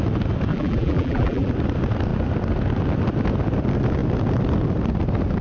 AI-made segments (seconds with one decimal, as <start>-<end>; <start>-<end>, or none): 0.5-1.5